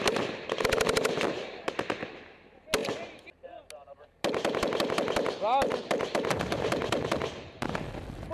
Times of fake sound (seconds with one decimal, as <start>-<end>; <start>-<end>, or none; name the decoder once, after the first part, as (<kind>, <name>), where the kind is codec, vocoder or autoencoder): none